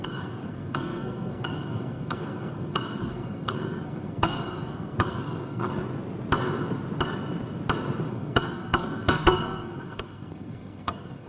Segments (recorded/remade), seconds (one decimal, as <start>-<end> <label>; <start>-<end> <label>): 0.0-5.7 remade; 5.7-8.1 recorded; 8.1-11.3 remade